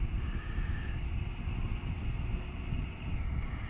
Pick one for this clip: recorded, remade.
recorded